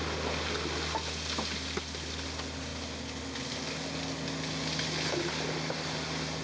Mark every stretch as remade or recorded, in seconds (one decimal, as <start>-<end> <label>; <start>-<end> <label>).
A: 0.0-6.4 recorded